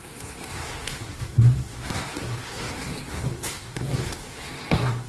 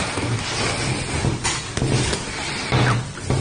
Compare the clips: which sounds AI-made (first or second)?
first